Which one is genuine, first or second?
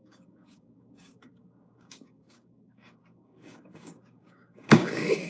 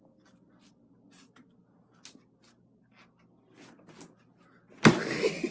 second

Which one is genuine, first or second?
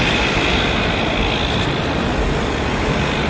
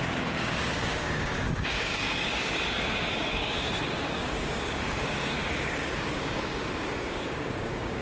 first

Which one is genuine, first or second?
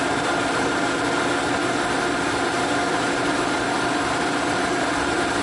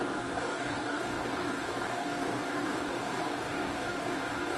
first